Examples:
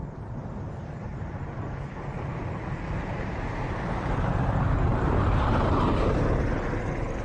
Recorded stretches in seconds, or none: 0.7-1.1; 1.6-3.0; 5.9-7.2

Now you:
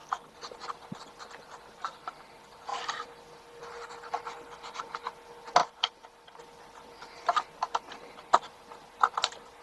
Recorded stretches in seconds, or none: 0.0-2.7; 4.9-5.6; 6.4-9.6

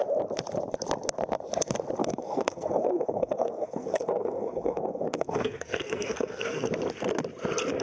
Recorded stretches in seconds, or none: 0.0-2.0; 6.7-7.8